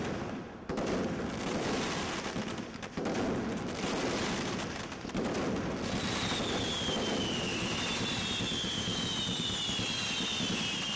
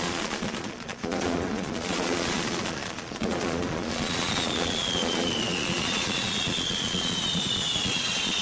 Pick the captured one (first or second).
first